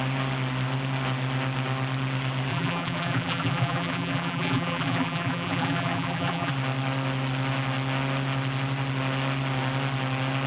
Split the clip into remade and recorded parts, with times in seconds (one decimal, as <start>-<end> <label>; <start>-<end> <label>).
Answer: 0.0-2.5 recorded; 2.5-6.5 remade; 6.5-10.5 recorded